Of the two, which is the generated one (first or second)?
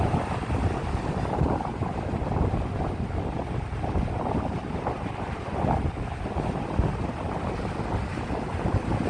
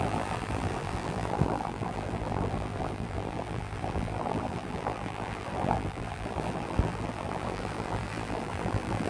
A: second